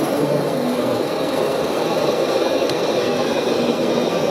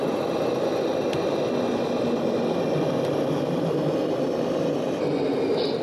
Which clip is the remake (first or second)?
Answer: first